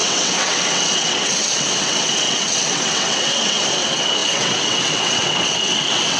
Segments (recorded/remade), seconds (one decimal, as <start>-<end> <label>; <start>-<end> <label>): 0.0-6.2 remade